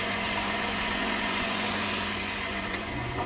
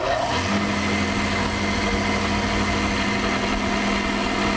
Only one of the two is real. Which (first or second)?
second